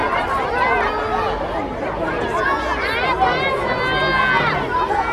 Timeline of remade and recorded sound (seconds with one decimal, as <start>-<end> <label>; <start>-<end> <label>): 0.0-5.1 recorded